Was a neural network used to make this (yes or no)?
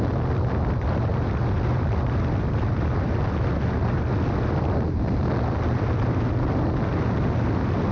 no